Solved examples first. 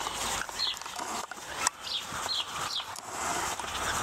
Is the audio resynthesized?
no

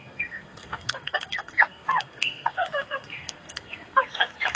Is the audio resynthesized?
yes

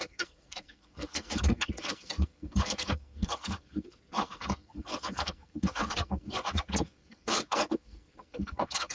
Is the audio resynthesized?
yes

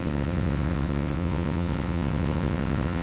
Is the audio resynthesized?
yes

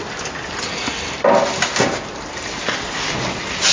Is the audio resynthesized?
no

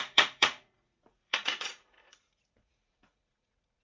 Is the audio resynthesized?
yes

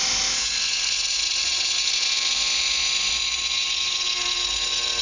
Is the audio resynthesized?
no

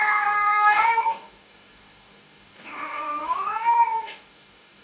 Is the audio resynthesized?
yes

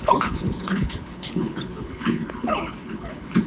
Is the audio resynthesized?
yes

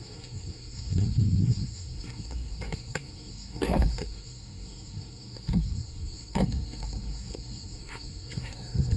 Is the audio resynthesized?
yes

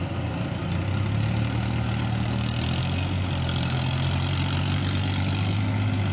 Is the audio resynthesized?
no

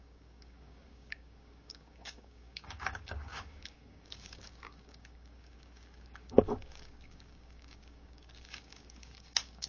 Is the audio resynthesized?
yes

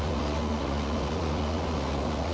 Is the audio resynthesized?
yes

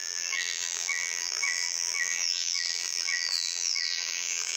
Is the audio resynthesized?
yes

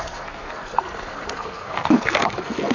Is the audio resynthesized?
yes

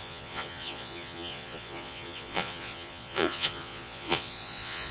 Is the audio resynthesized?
yes